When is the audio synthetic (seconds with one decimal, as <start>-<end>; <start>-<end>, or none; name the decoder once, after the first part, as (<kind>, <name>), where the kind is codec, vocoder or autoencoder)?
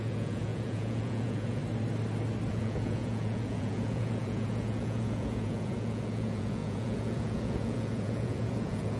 0.0-1.6 (vocoder, Vocos); 2.5-9.0